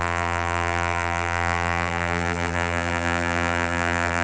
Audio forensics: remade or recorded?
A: remade